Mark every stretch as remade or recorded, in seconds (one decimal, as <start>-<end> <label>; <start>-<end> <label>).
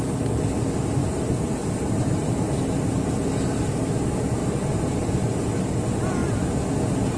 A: 0.0-1.0 recorded; 1.0-3.3 remade; 3.3-4.4 recorded; 4.4-5.5 remade; 5.5-7.2 recorded